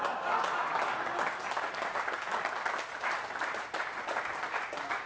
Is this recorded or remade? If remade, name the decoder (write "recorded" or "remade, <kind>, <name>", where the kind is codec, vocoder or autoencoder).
recorded